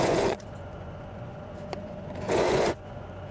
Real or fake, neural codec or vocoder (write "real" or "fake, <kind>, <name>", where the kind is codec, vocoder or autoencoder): fake, vocoder, Vocos